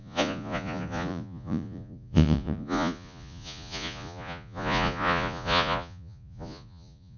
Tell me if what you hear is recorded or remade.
remade